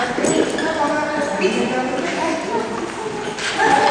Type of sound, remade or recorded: recorded